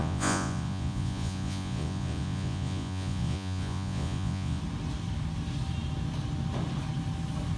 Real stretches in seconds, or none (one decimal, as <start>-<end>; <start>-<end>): 4.6-7.6